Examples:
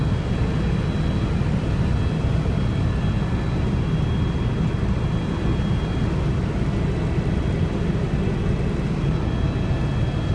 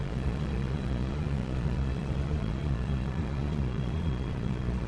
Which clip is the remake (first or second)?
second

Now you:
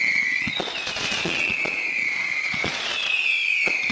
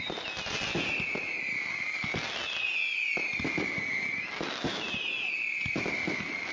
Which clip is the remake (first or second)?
first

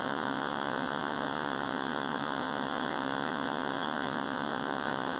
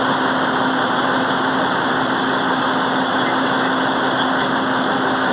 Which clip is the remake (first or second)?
first